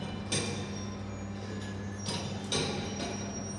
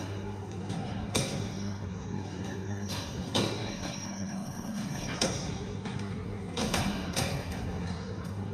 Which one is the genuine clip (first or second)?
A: first